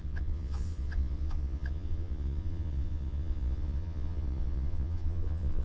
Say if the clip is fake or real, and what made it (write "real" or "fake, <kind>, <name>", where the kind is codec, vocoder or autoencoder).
fake, vocoder, Vocos